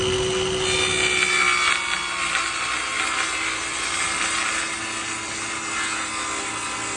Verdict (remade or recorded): recorded